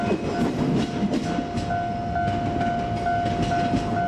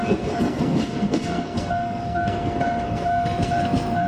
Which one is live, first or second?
first